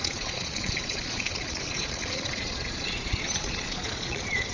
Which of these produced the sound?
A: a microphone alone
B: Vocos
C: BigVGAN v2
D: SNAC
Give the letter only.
B